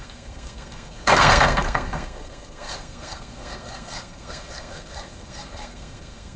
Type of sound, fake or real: fake